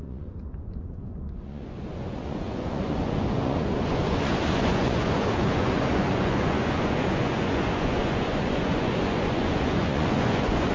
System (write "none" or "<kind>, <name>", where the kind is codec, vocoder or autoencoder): vocoder, Vocos